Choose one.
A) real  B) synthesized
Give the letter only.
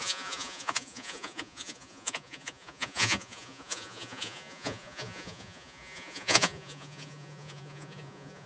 B